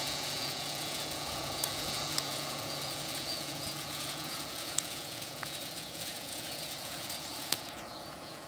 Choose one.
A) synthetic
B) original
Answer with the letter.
A